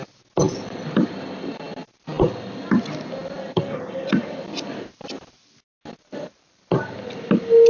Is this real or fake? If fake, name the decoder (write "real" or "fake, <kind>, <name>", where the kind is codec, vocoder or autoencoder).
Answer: real